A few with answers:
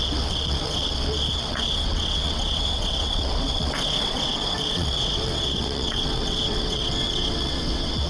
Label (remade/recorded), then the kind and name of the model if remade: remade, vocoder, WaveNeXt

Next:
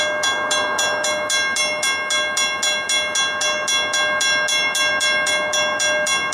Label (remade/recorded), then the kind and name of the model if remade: recorded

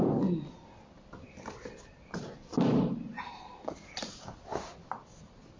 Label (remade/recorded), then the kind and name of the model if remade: recorded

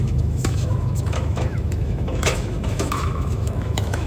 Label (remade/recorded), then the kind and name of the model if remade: remade, autoencoder, DAC-VAE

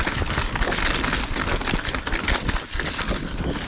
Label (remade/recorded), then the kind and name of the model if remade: recorded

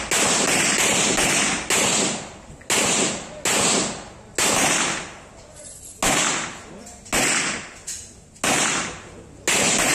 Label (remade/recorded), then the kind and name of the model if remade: recorded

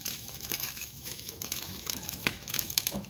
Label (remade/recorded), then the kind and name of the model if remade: remade, autoencoder, DAC-VAE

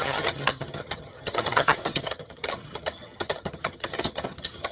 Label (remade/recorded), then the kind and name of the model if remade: remade, vocoder, HiFi-GAN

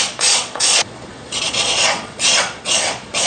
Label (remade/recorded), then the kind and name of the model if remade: remade, vocoder, Vocos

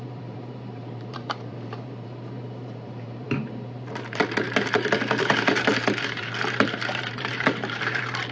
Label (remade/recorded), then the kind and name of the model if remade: remade, vocoder, BigVGAN v2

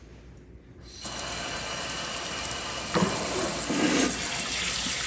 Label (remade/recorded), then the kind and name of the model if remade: recorded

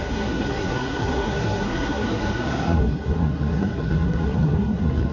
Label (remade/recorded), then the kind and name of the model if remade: remade, codec, SNAC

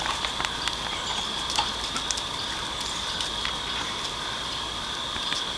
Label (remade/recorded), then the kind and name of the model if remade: recorded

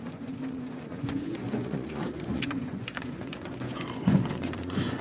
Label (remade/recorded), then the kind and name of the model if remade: remade, vocoder, Vocos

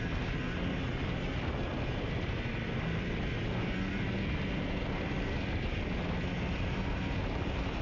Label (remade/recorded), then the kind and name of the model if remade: recorded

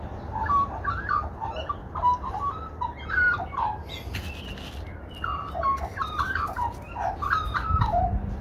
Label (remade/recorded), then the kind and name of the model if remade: recorded